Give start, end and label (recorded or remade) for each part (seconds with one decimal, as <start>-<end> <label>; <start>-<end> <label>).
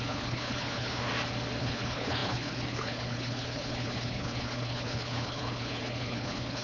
0.0-1.1 remade; 1.1-1.6 recorded; 1.6-6.6 remade